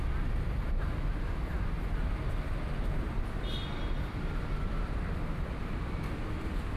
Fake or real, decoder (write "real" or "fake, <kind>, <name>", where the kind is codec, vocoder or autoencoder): real